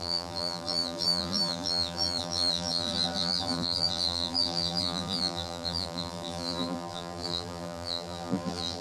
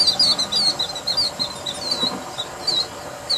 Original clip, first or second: second